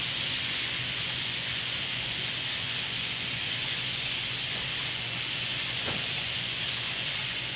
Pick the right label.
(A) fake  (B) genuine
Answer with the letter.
A